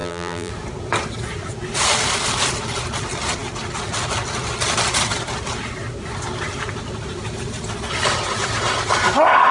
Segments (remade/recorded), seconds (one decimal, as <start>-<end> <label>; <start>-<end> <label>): 0.0-0.5 remade; 0.5-9.5 recorded